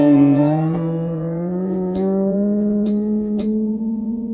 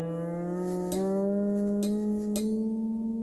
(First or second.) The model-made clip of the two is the first